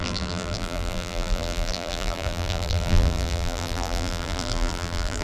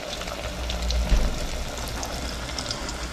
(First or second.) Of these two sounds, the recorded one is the second